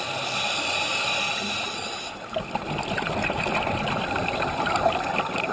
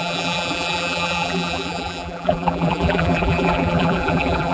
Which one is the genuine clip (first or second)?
first